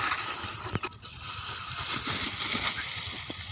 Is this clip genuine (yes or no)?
yes